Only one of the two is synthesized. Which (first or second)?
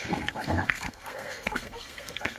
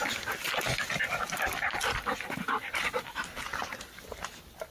first